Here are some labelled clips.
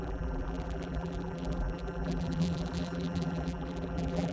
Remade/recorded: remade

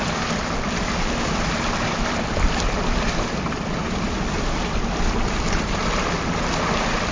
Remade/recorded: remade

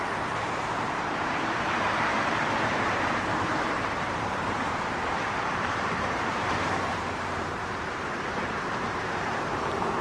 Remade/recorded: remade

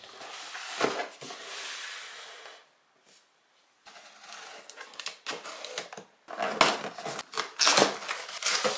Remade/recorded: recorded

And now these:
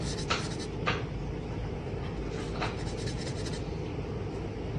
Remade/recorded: recorded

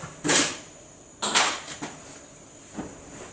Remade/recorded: remade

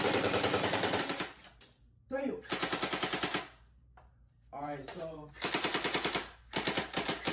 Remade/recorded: remade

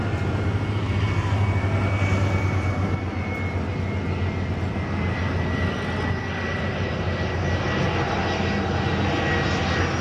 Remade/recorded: recorded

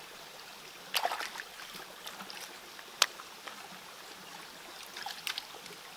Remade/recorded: recorded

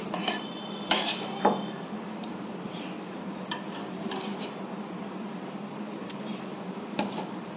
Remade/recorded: remade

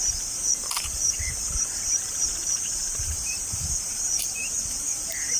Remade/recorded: remade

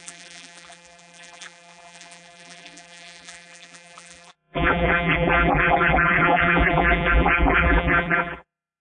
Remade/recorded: remade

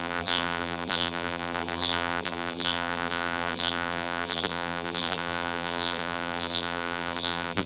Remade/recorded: remade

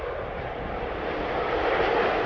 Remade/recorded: recorded